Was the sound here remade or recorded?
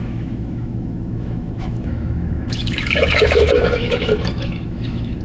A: remade